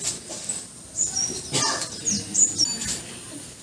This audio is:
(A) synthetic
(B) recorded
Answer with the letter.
B